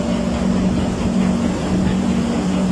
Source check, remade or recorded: recorded